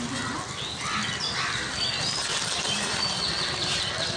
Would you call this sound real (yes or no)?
yes